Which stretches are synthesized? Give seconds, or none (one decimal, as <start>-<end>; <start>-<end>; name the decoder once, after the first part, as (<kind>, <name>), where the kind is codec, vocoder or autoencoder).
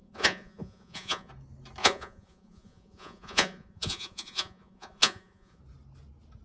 0.0-1.3 (vocoder, Vocos); 1.8-5.6